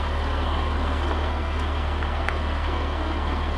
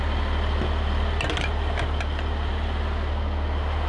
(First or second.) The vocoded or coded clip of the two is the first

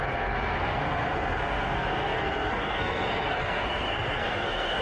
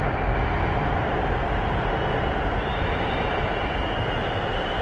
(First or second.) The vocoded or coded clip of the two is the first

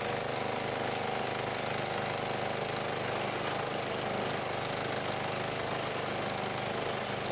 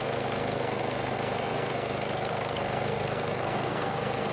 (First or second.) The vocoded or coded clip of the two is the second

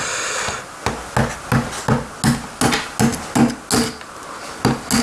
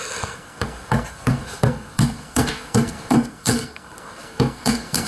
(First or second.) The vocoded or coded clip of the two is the second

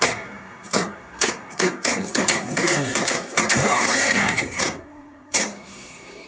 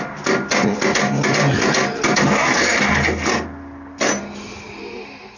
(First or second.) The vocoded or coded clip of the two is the first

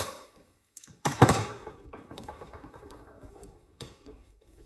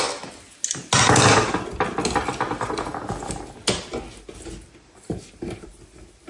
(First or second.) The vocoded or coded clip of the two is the first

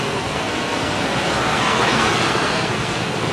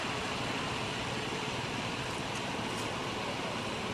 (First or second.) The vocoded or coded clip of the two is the first